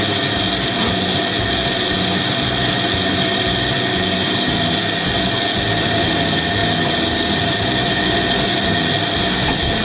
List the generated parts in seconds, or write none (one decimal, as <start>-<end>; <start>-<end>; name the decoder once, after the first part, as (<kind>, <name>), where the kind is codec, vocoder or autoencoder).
none